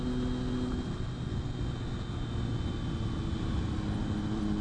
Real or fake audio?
real